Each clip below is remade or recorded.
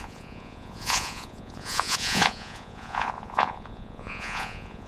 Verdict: remade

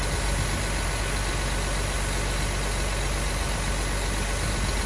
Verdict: recorded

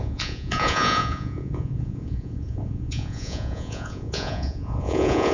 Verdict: remade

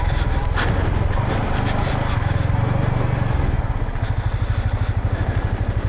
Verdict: recorded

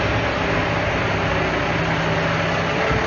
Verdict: recorded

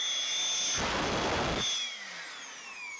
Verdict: recorded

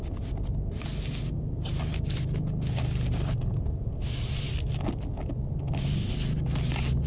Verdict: recorded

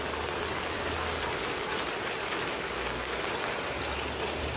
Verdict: recorded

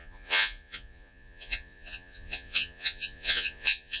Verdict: remade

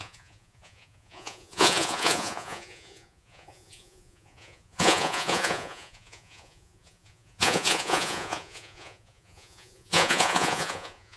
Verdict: remade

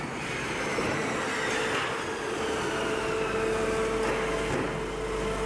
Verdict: recorded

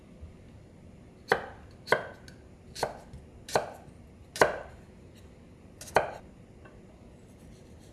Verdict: recorded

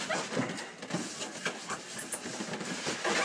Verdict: recorded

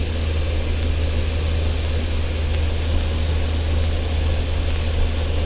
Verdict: recorded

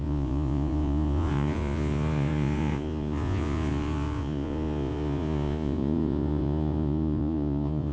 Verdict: remade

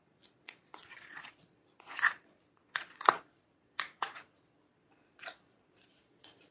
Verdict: remade